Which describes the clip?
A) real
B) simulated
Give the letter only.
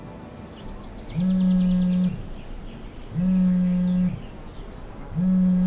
A